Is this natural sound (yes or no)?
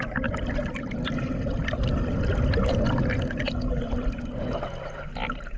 yes